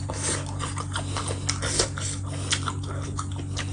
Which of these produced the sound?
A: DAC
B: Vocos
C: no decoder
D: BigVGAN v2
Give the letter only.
C